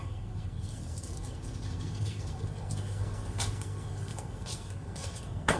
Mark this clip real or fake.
fake